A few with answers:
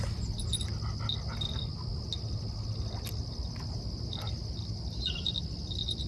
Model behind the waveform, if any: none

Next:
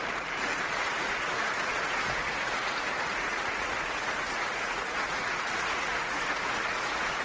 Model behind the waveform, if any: vocoder, Vocos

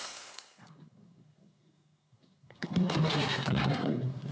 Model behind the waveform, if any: codec, SNAC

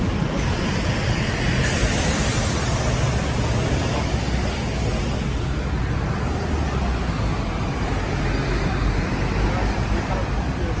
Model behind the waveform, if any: none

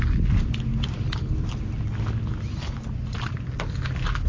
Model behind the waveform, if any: none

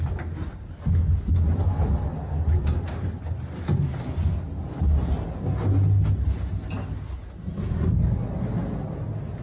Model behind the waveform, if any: none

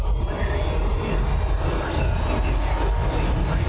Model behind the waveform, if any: none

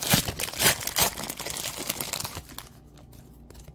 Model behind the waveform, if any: none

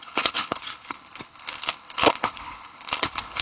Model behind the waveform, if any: codec, HILCodec